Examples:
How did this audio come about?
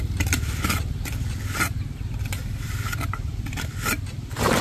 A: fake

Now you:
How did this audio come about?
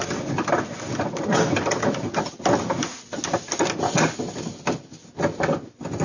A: real